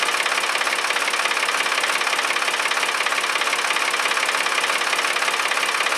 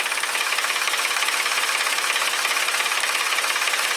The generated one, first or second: second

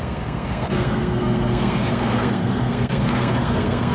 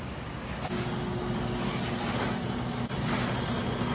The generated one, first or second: first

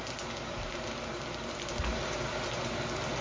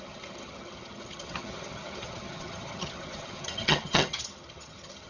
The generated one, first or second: second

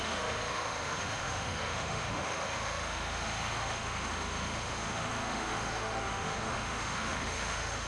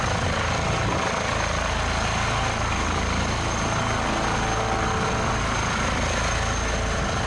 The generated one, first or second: first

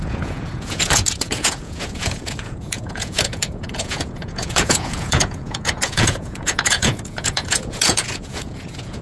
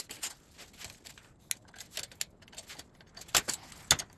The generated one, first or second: first